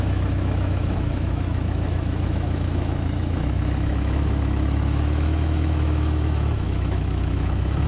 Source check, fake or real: fake